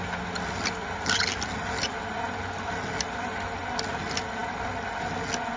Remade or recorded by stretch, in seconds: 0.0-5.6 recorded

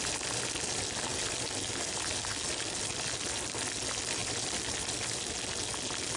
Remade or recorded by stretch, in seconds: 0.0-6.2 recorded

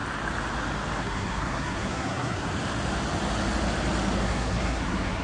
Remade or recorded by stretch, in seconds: 0.0-1.0 recorded; 1.0-2.5 remade; 2.5-4.2 recorded; 4.2-5.2 remade

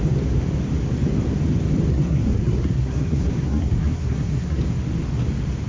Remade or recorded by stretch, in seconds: 0.0-1.9 recorded; 1.9-4.6 remade; 4.6-5.7 recorded

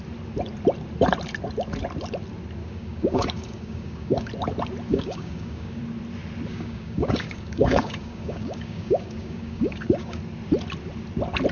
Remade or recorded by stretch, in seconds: 0.0-2.6 recorded; 2.6-4.3 remade; 4.3-4.9 recorded; 4.9-5.8 remade; 5.8-6.5 recorded; 6.5-10.2 remade; 10.2-11.5 recorded